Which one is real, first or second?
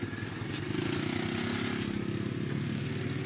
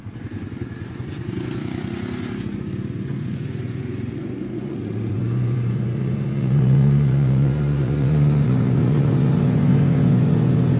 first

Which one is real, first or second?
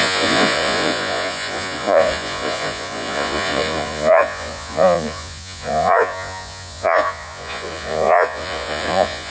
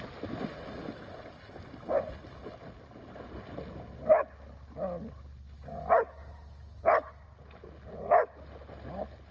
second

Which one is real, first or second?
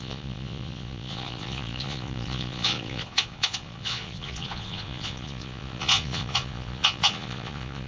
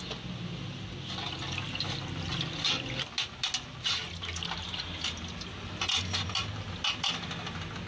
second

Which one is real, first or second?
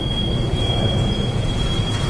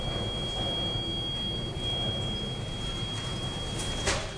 second